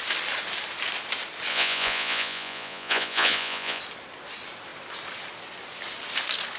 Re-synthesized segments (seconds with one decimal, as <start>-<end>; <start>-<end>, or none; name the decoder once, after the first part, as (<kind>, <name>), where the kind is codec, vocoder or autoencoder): 1.5-3.8 (vocoder, Vocos)